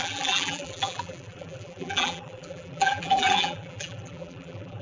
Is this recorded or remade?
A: remade